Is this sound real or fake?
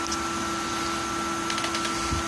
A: real